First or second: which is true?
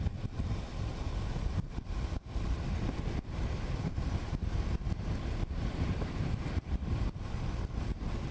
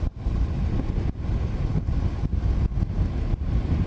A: second